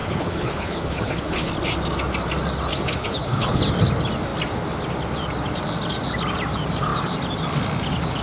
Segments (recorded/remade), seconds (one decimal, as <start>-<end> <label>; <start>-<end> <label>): 0.0-1.5 remade; 1.5-2.7 recorded; 2.7-3.6 remade; 3.6-8.2 recorded